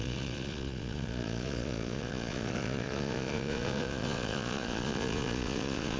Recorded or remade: remade